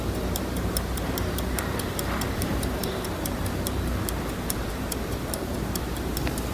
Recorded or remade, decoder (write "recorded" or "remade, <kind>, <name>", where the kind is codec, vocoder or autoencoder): remade, vocoder, BigVGAN v2